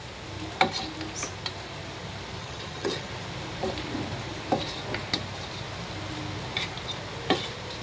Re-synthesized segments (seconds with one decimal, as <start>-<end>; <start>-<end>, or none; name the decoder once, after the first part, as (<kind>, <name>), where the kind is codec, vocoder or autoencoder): 2.4-3.1 (vocoder, HiFi-GAN)